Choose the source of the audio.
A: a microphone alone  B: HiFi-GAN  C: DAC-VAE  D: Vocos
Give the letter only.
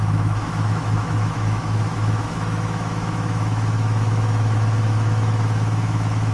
C